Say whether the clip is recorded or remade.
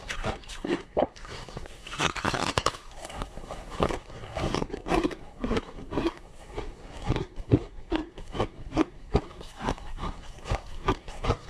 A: remade